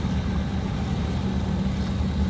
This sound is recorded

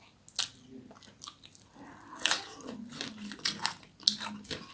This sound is recorded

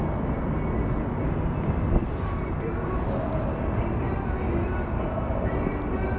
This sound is recorded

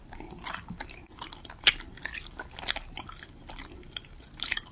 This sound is recorded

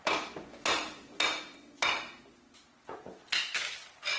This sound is recorded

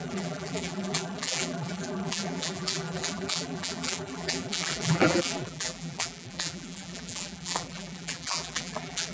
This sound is remade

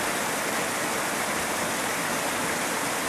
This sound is recorded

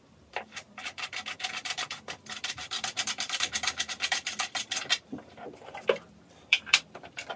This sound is remade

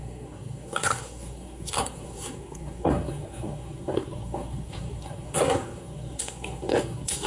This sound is remade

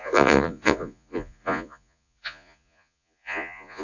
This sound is remade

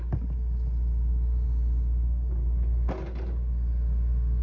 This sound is recorded